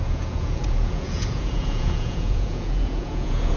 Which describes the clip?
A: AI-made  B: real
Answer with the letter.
A